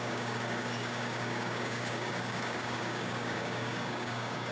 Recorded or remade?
remade